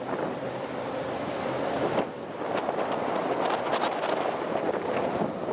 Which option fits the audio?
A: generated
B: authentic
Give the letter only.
B